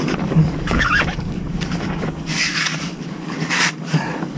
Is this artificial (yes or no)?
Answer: yes